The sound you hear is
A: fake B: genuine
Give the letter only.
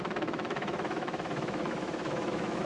A